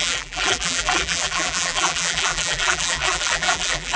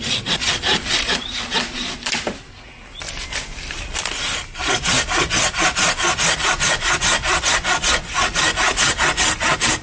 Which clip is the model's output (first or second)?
first